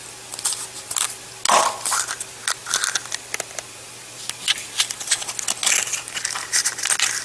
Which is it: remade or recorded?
recorded